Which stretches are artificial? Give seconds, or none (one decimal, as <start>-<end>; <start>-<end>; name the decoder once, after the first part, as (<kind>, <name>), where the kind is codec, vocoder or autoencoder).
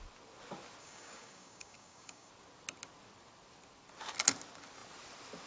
0.8-2.3 (codec, DAC)